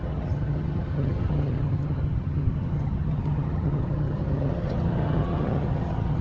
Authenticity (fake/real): fake